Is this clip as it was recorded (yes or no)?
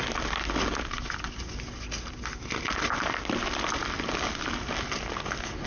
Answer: yes